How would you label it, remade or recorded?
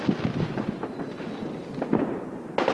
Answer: recorded